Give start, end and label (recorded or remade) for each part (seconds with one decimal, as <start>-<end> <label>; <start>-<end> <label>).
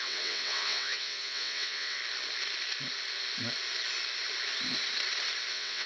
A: 0.0-2.0 remade; 2.0-5.5 recorded; 5.5-5.9 remade